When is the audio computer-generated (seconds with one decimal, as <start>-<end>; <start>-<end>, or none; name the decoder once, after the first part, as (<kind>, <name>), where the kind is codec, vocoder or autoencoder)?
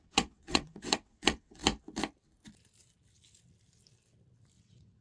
0.0-1.6 (vocoder, WaveNeXt); 4.6-5.0